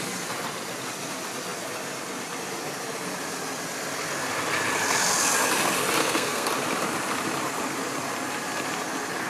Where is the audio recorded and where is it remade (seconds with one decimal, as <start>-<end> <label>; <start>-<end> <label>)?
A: 0.0-6.0 recorded; 6.0-6.5 remade; 6.5-9.3 recorded